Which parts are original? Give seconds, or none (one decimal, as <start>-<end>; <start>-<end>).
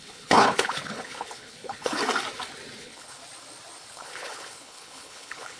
2.0-2.8; 3.2-3.9